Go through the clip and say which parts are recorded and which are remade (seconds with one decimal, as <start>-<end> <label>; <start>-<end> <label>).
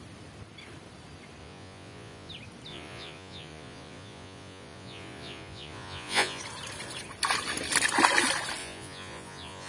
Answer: 0.0-1.4 recorded; 1.4-2.3 remade; 2.3-2.7 recorded; 2.7-6.4 remade; 6.4-8.6 recorded; 8.6-9.7 remade